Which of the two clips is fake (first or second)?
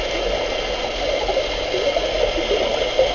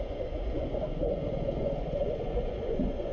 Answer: second